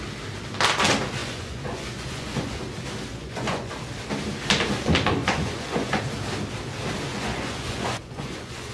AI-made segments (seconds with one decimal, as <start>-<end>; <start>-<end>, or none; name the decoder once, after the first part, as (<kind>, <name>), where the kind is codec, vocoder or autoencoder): 1.2-2.6 (vocoder, Vocos); 3.1-3.7; 5.2-6.0; 7.1-8.7